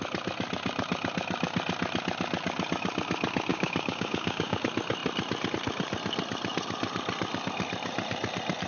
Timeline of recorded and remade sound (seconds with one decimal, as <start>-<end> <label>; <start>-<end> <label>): 0.0-3.5 recorded; 3.5-4.6 remade; 4.6-8.7 recorded

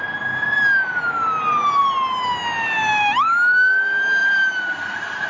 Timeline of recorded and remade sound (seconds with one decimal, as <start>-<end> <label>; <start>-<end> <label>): 0.0-4.2 recorded; 4.2-5.3 remade

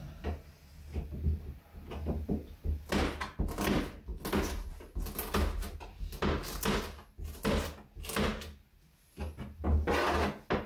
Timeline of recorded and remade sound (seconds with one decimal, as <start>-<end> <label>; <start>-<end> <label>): 0.0-10.7 recorded

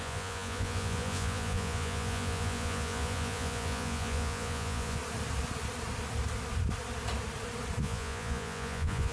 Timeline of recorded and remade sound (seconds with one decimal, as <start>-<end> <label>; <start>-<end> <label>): 0.0-5.0 remade; 5.0-7.8 recorded; 7.8-9.1 remade

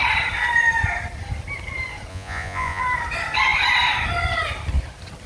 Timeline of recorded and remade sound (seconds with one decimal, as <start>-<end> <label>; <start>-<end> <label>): 0.0-2.1 recorded; 2.1-2.8 remade; 2.8-5.3 recorded

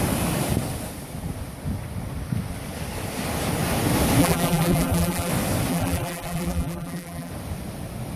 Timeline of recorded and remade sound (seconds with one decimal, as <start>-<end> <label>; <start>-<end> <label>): 0.0-4.2 recorded; 4.2-5.3 remade; 5.3-5.7 recorded; 5.7-7.3 remade; 7.3-8.2 recorded

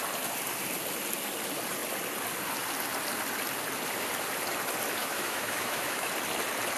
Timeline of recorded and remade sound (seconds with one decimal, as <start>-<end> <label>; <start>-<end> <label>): 0.0-5.0 recorded; 5.0-6.1 remade; 6.1-6.8 recorded

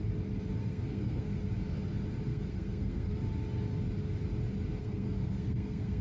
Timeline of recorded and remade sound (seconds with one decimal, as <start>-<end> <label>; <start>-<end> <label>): 0.0-0.6 recorded; 0.6-1.5 remade; 1.5-2.3 recorded; 2.3-3.2 remade; 3.2-4.8 recorded; 4.8-6.0 remade